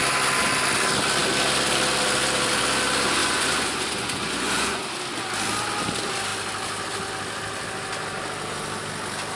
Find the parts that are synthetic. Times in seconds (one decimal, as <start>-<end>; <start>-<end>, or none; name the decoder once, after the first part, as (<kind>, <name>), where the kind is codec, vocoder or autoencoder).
3.2-4.8 (vocoder, Vocos)